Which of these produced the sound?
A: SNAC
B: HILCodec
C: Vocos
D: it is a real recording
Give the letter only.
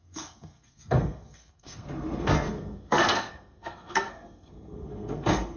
A